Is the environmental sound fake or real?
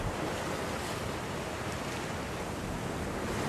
real